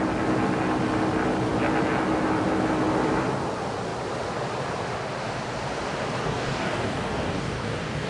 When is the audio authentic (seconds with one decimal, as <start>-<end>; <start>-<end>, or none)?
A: 0.0-6.2